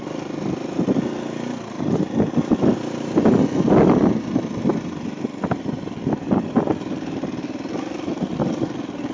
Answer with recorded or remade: recorded